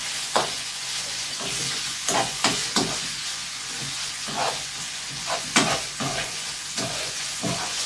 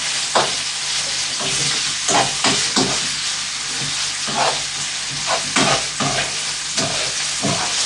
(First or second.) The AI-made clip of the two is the first